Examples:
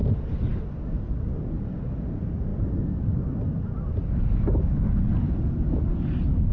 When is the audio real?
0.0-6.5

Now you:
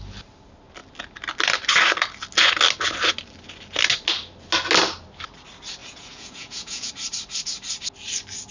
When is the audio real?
0.0-5.8; 6.9-8.5

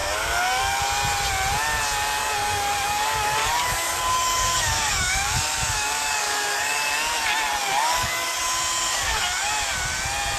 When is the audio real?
0.8-2.2; 6.9-7.6; 8.4-8.9; 9.5-10.4

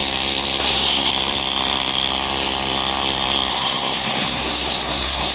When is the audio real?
0.0-0.6; 1.1-3.5

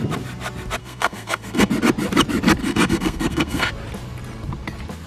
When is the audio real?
0.0-0.8; 1.7-2.6; 3.7-5.1

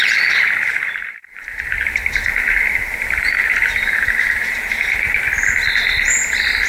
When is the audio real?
0.0-0.7; 1.9-2.9; 5.1-6.7

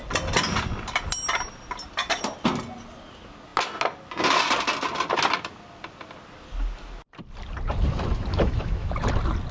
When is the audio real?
0.0-8.3; 8.9-9.5

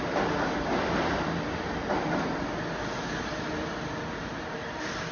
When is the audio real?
0.0-5.1